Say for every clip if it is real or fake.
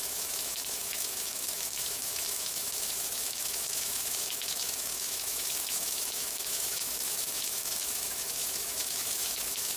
fake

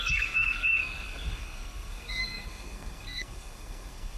fake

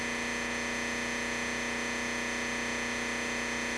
real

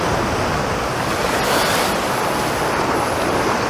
real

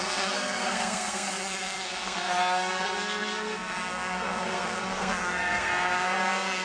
fake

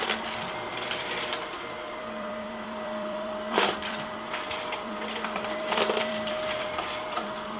fake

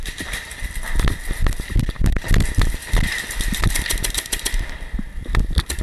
fake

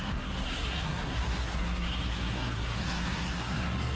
fake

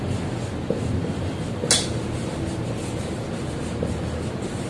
real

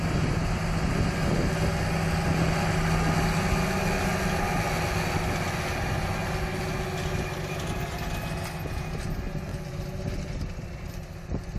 real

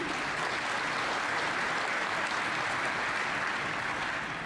real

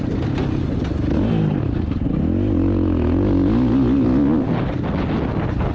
real